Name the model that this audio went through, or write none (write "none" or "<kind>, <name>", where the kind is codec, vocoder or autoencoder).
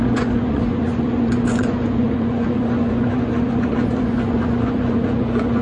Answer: vocoder, Vocos